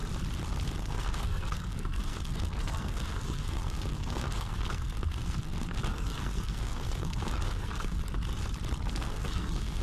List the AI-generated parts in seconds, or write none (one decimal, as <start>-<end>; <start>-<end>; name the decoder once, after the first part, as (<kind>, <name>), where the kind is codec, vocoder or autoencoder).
0.8-8.0 (codec, SNAC); 8.9-9.8